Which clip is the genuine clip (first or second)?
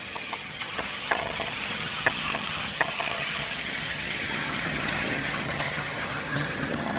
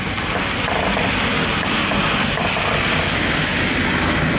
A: second